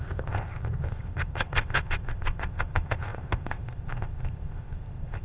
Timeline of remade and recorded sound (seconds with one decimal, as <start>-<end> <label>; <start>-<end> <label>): 0.0-5.2 remade